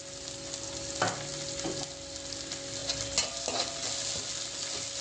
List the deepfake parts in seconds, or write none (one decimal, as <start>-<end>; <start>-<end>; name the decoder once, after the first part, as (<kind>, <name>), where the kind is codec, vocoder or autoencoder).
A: none